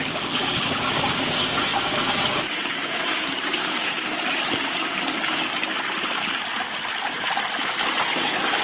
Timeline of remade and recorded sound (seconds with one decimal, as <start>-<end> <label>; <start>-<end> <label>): 0.0-5.4 remade; 5.4-8.0 recorded; 8.0-8.6 remade